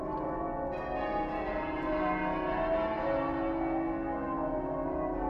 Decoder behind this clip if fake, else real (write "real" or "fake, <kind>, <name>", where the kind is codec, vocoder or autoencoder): real